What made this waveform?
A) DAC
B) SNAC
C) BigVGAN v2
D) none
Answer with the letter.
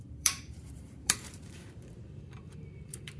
C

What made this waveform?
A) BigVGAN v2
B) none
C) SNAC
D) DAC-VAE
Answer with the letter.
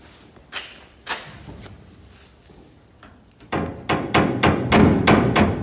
B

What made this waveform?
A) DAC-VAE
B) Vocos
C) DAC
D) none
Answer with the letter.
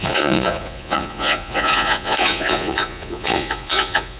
B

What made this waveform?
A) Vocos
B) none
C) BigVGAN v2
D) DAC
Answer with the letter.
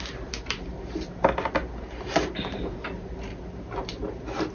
B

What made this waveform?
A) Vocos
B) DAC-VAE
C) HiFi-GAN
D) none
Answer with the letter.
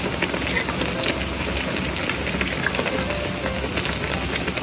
D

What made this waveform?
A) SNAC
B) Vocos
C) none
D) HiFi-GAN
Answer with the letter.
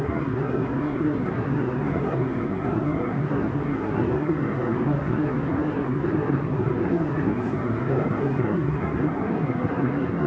A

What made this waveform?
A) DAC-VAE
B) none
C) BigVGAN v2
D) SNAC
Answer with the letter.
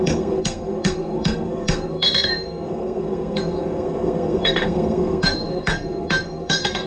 D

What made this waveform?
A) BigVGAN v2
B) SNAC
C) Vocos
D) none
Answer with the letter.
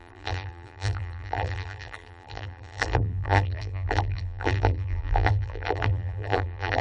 A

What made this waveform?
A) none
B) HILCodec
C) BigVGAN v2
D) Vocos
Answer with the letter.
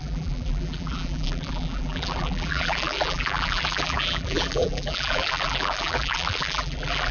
C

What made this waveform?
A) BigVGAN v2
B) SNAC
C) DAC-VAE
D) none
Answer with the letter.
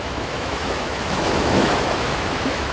C